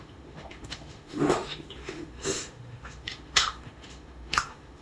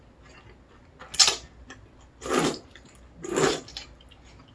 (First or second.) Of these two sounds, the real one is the second